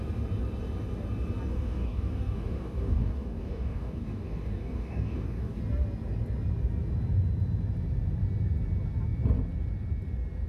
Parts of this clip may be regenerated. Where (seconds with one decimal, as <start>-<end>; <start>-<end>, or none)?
1.5-5.6